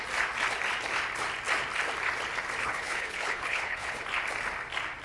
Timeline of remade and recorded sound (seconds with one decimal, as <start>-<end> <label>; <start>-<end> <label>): 0.0-2.6 recorded; 2.6-4.0 remade; 4.0-5.0 recorded